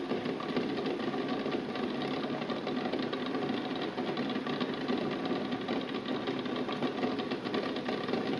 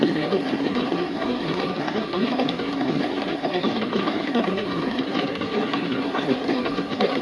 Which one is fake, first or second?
second